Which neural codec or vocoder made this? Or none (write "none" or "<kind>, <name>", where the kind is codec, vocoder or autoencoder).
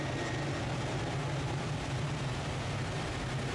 none